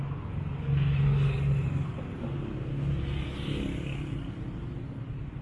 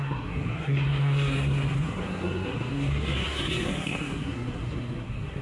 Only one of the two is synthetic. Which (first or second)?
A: second